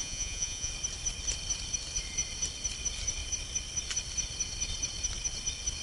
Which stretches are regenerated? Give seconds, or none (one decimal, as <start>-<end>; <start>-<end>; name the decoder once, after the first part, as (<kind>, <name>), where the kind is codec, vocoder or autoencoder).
0.0-0.7 (vocoder, Vocos)